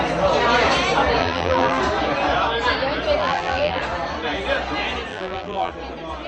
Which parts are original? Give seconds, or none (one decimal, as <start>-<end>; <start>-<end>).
0.0-1.2; 1.8-3.2; 3.8-5.1; 5.7-6.3